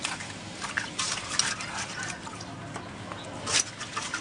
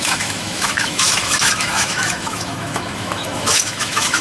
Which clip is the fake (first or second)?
second